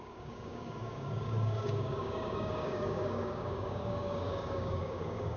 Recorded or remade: remade